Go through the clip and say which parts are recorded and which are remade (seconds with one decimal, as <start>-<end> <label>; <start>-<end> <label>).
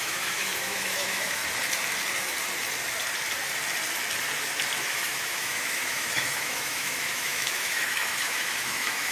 0.0-1.4 remade; 1.4-4.8 recorded; 4.8-9.1 remade